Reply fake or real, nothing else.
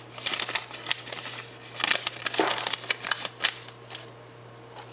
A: real